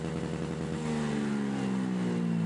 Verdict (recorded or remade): recorded